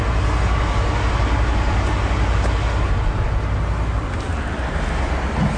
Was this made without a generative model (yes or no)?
yes